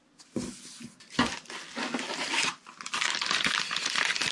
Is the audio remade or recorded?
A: recorded